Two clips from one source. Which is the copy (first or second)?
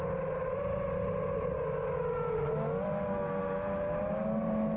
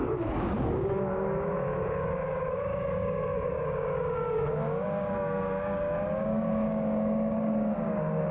second